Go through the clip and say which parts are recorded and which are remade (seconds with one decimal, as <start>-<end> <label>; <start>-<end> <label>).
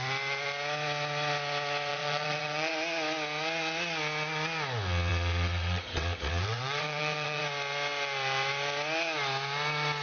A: 0.0-1.9 recorded; 1.9-2.7 remade; 2.7-5.1 recorded; 5.1-7.4 remade; 7.4-10.0 recorded